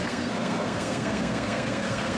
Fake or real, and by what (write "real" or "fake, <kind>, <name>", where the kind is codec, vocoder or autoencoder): fake, codec, SNAC